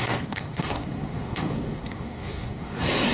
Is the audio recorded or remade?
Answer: remade